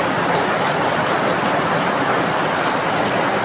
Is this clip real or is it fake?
real